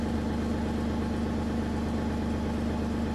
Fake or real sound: real